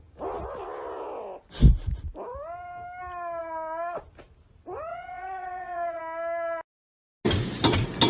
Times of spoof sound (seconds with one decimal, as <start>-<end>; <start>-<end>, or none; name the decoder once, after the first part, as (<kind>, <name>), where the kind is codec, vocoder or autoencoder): 4.9-6.0 (vocoder, WaveNeXt)